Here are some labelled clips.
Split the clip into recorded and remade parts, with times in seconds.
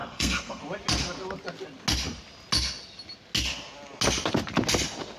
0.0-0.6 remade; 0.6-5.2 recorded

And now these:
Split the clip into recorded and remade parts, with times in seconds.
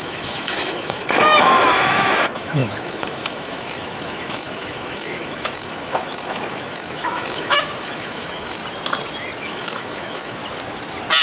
0.0-8.6 remade; 8.6-9.4 recorded; 9.4-10.4 remade; 10.4-11.2 recorded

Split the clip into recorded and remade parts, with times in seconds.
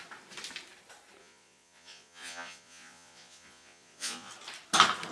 0.0-1.2 recorded; 1.2-4.3 remade; 4.3-5.1 recorded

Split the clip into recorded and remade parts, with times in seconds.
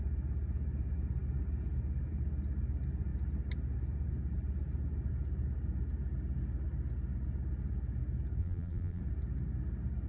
0.0-8.4 recorded; 8.4-9.0 remade; 9.0-10.1 recorded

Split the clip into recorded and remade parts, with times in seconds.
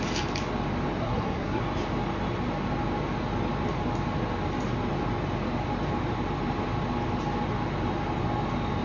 0.0-1.0 recorded; 1.0-1.6 remade; 1.6-8.8 recorded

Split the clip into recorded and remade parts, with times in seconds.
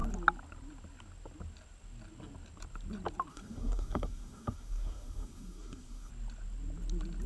0.0-3.3 recorded; 3.3-6.1 remade; 6.1-7.3 recorded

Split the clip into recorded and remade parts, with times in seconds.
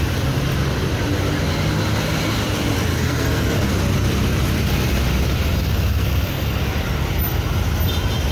0.0-2.9 recorded; 2.9-3.7 remade; 3.7-5.6 recorded; 5.6-6.6 remade; 6.6-8.3 recorded